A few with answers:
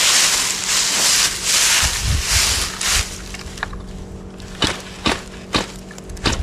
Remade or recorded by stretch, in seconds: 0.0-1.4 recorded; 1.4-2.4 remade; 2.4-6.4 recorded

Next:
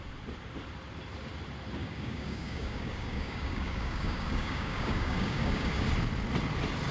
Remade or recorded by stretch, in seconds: 0.0-1.8 recorded; 1.8-5.9 remade; 5.9-6.9 recorded

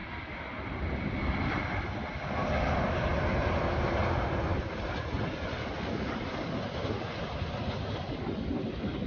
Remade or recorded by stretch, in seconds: 0.0-9.1 recorded

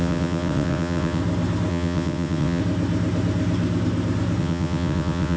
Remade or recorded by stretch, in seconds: 0.0-1.2 remade; 1.2-1.7 recorded; 1.7-2.6 remade; 2.6-4.4 recorded; 4.4-5.4 remade